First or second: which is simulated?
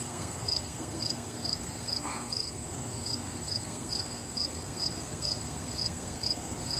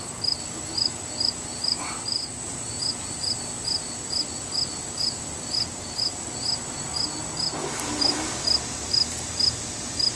first